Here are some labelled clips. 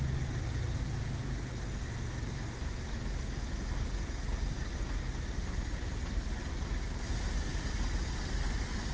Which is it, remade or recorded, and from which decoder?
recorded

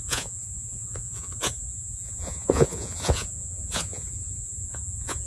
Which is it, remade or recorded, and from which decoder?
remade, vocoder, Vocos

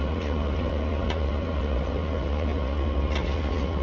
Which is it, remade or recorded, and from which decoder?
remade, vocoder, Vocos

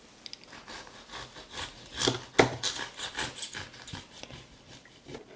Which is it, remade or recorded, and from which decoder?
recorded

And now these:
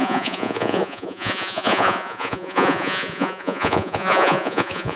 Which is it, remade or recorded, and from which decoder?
remade, vocoder, Vocos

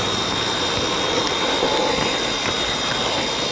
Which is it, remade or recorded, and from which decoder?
recorded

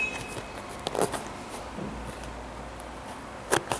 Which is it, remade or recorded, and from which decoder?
recorded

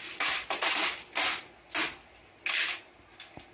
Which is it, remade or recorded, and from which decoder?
recorded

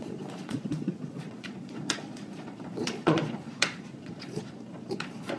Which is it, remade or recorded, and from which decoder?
remade, vocoder, Vocos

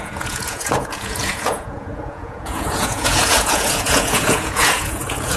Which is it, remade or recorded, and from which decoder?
remade, vocoder, Vocos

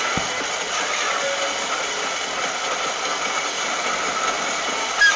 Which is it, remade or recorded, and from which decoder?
recorded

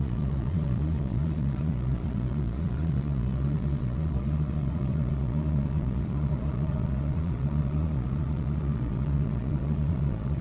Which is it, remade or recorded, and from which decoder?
remade, vocoder, Vocos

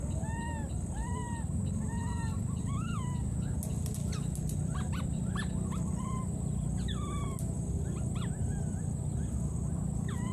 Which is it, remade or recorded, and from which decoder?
recorded